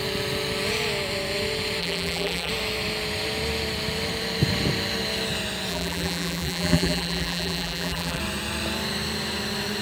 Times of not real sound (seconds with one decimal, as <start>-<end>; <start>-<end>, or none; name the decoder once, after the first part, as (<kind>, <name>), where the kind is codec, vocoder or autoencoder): 1.8-2.5 (vocoder, BigVGAN v2); 5.7-8.2